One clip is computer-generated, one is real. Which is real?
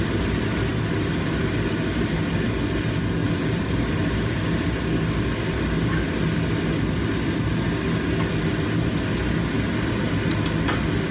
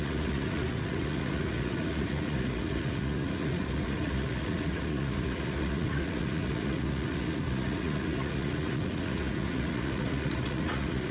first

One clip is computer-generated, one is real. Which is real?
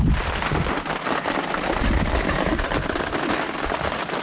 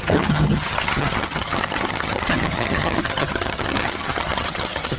first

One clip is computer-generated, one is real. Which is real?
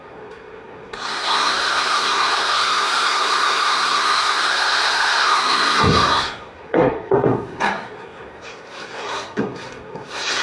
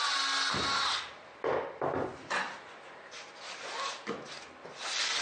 second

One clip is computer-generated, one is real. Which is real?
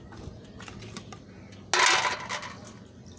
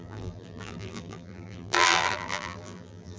first